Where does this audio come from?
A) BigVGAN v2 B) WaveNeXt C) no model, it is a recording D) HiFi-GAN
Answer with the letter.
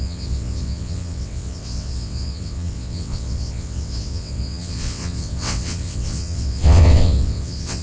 B